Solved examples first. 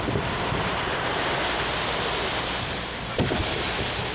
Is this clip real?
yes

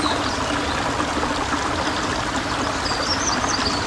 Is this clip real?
yes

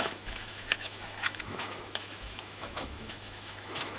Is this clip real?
no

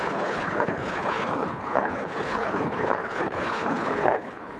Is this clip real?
no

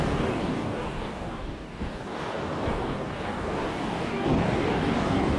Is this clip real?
no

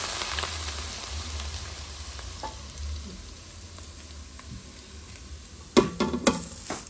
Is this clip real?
yes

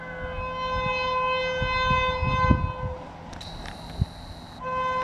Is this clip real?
yes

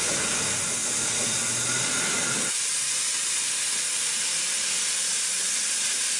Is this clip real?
yes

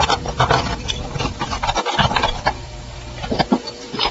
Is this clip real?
no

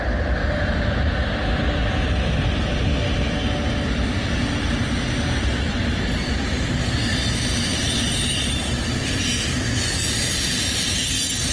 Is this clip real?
yes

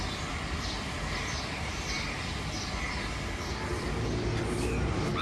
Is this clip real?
yes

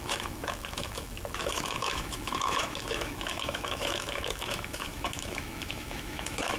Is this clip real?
no